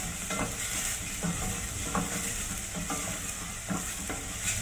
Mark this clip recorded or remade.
recorded